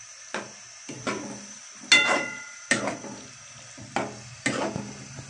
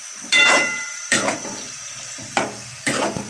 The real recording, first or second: first